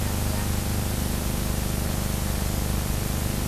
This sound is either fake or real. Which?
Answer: real